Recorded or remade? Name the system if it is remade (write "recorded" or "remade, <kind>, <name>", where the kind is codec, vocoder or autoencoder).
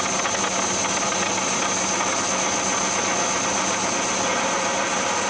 recorded